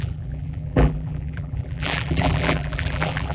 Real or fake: fake